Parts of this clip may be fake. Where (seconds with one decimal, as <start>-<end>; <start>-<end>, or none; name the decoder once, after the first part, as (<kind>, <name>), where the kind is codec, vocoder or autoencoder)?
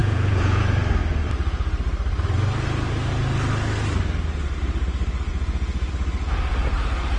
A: 0.0-0.6 (vocoder, Vocos); 5.3-5.9